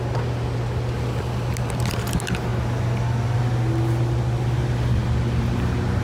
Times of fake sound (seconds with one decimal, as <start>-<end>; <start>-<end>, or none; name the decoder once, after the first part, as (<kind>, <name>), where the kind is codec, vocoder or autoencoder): none